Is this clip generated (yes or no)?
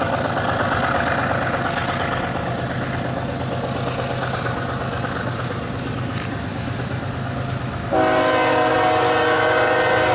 no